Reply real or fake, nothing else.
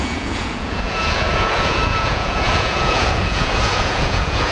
fake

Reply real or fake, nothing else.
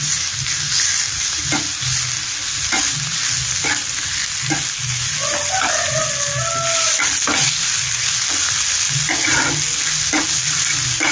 real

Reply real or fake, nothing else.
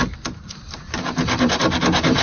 real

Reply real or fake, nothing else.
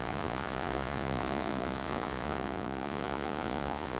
fake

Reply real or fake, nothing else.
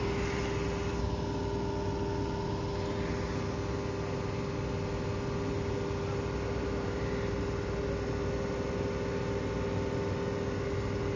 real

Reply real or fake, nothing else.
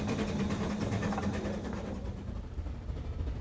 real